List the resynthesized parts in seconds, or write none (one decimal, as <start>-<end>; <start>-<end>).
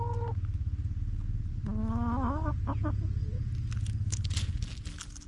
1.8-2.5